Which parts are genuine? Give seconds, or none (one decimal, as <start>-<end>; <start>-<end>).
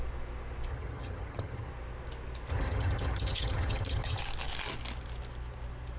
0.0-0.7; 1.7-2.5; 4.2-6.0